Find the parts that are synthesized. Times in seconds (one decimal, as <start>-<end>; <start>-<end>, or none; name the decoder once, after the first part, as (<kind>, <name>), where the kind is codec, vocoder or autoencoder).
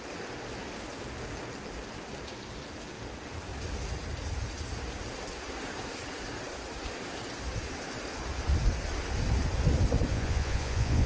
10.1-11.1 (vocoder, Vocos)